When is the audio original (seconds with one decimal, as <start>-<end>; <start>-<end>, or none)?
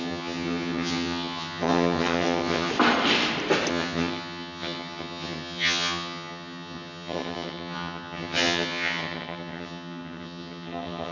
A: 2.7-3.7